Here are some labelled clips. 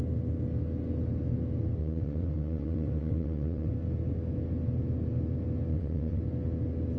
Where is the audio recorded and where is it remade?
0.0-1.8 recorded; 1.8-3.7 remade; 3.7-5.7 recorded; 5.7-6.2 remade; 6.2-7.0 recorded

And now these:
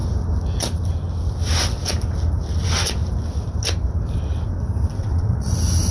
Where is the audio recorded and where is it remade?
0.0-5.0 recorded; 5.0-5.5 remade; 5.5-5.9 recorded

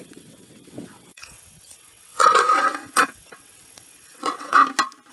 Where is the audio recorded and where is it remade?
0.0-4.6 remade; 4.6-5.1 recorded

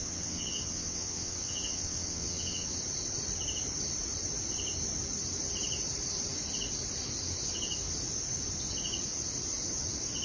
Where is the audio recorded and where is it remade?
0.0-2.8 remade; 2.8-10.2 recorded

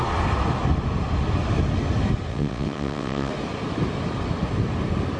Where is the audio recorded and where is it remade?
0.0-2.3 recorded; 2.3-3.3 remade; 3.3-5.2 recorded